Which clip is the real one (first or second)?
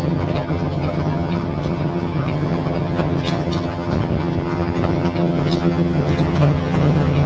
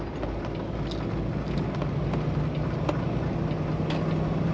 second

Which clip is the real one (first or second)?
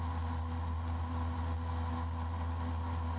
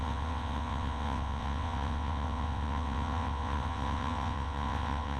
first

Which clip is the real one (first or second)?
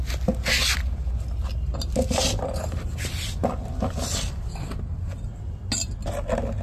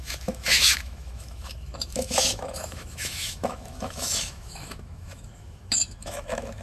first